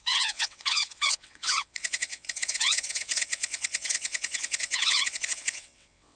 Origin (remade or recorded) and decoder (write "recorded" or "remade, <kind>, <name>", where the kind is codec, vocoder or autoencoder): remade, vocoder, WaveNeXt